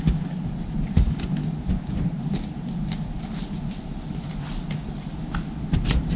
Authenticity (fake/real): real